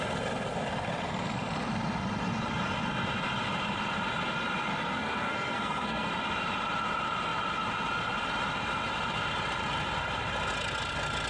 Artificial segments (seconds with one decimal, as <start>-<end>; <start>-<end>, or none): 4.7-6.1